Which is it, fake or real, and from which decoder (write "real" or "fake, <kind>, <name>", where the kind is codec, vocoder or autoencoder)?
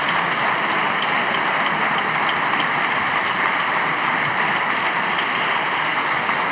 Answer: real